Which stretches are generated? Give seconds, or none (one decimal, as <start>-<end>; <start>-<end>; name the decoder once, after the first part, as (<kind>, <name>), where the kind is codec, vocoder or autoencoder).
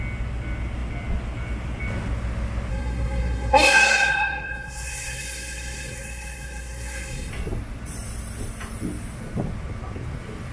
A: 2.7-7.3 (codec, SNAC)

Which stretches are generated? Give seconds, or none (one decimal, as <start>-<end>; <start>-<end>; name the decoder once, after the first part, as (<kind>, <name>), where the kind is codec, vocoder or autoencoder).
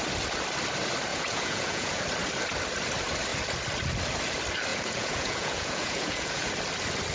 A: 1.1-2.0 (vocoder, Vocos); 4.7-6.5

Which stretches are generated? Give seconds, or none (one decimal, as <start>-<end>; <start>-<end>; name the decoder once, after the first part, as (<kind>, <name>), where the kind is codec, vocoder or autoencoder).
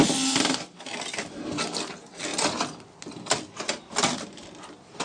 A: none